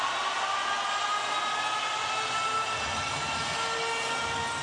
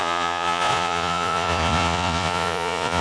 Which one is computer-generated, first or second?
second